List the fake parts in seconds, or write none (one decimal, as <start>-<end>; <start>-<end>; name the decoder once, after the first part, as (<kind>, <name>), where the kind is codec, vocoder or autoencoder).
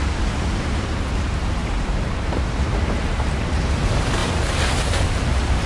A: 0.0-5.7 (vocoder, BigVGAN v2)